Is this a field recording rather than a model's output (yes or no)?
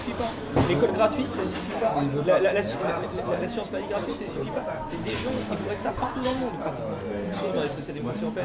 yes